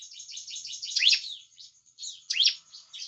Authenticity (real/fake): fake